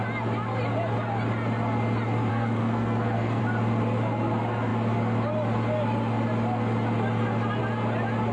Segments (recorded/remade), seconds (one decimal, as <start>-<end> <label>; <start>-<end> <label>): 0.0-2.3 recorded; 2.3-3.4 remade; 3.4-8.3 recorded